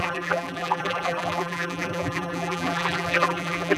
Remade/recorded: remade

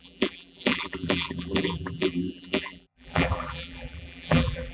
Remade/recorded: remade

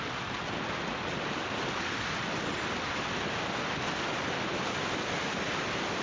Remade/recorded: recorded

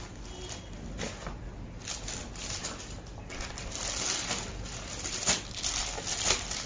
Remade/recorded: recorded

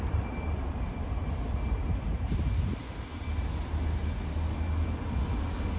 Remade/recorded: recorded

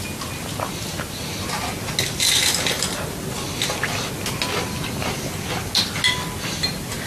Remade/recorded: recorded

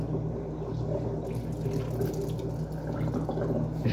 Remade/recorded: recorded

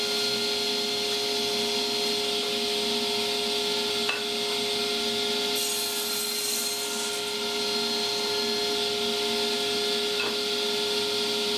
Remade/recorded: recorded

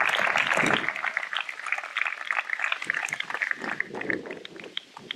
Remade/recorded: recorded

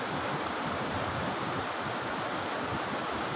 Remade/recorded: recorded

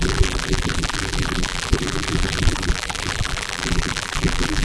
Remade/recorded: remade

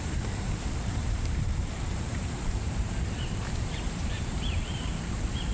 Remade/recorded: remade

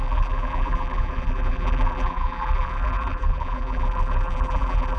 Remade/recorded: remade